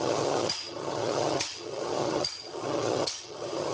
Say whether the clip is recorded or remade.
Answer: remade